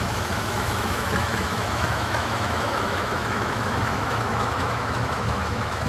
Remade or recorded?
remade